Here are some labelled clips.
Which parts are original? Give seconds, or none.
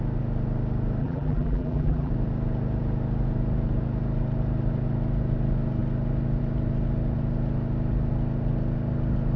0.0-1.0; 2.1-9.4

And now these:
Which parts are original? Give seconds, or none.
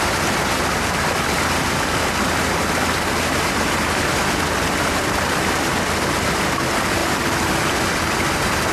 0.0-7.0; 7.6-8.7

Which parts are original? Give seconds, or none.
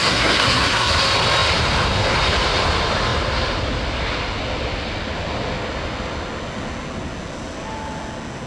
1.0-8.5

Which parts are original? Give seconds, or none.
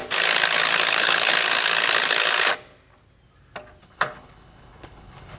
0.0-0.9; 1.3-3.8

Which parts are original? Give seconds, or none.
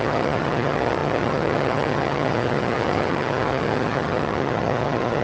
none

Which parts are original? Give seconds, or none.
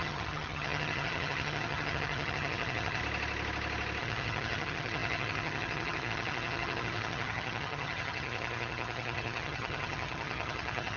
3.0-4.0